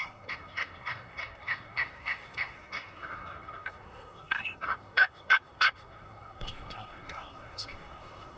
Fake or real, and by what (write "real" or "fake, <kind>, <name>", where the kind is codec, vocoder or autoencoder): fake, codec, SNAC